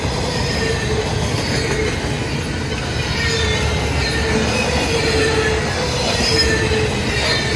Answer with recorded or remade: recorded